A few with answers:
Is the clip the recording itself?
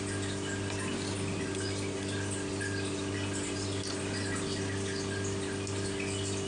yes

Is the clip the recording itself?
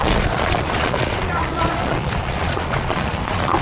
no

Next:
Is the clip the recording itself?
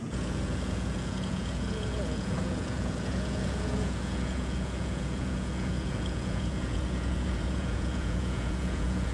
no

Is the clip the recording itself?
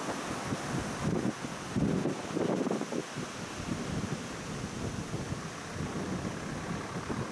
yes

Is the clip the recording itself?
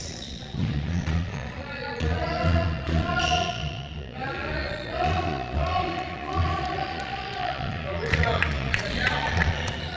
no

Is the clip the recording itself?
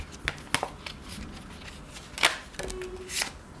yes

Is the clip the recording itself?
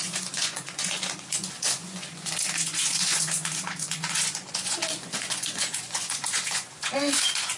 no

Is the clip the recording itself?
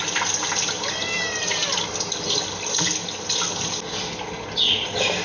yes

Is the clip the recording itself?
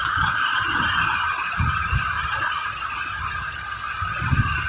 yes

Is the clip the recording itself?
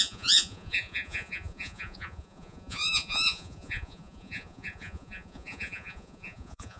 no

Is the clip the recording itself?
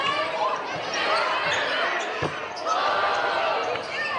yes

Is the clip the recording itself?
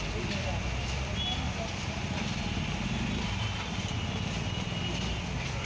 yes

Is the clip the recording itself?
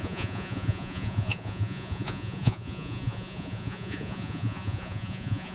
no